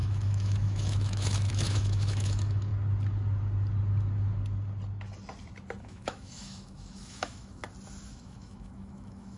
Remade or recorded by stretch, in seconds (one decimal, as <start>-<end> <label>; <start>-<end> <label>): 0.0-2.7 remade; 2.7-5.8 recorded; 5.8-7.6 remade; 7.6-8.1 recorded; 8.1-9.4 remade